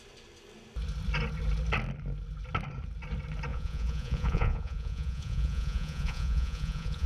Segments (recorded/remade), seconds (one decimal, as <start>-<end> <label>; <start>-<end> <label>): 0.0-3.5 recorded; 3.5-7.1 remade